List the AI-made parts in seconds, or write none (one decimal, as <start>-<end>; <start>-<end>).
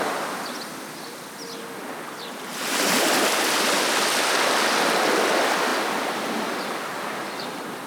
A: 2.5-3.1; 6.9-7.5